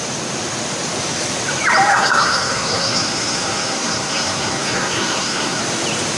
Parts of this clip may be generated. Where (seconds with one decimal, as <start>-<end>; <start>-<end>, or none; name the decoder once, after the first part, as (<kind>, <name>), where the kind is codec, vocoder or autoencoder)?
1.9-5.6 (codec, SNAC)